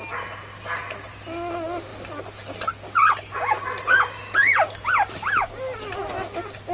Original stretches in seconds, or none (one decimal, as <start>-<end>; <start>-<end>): 0.0-6.7